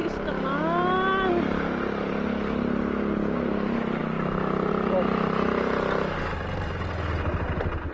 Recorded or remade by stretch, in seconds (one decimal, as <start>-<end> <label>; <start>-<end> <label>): 0.0-7.9 recorded